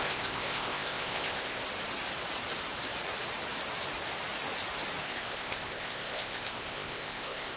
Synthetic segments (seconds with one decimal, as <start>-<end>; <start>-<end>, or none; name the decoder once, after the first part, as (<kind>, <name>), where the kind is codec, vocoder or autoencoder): 0.0-1.6 (codec, ZipCodec); 5.0-7.6